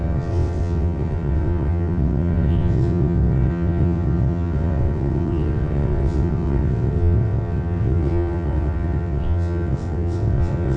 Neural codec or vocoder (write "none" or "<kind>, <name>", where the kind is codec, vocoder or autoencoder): vocoder, WaveNeXt